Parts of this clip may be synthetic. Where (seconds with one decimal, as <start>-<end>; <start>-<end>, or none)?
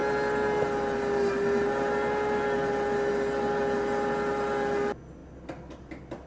none